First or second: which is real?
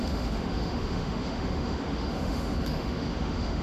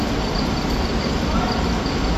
second